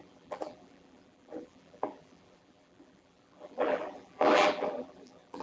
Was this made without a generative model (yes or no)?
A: no